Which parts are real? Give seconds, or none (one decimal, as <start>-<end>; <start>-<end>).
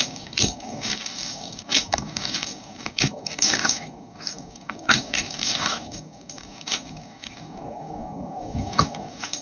none